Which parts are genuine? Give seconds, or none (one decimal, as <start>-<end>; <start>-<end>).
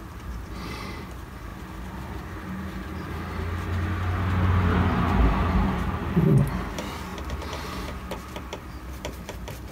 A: 1.5-4.7; 7.1-9.0